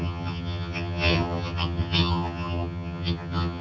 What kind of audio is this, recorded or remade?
remade